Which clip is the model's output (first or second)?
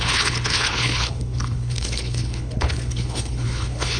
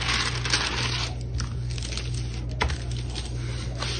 first